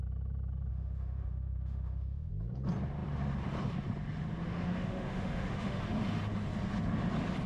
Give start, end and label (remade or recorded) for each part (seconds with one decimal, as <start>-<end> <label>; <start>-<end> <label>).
0.0-0.7 recorded; 0.7-2.3 remade; 2.3-4.5 recorded; 4.5-5.8 remade; 5.8-7.5 recorded